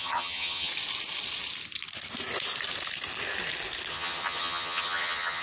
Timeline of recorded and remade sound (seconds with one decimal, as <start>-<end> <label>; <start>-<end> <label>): 0.0-0.7 remade; 0.7-3.9 recorded; 3.9-5.4 remade